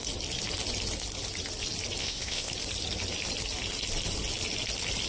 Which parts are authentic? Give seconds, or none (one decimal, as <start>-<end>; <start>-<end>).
0.0-2.0; 2.5-5.1